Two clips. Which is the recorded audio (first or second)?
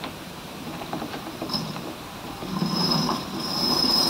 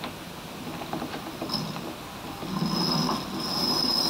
second